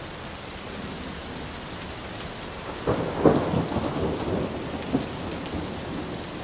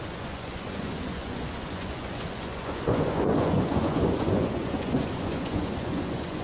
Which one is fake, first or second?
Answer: second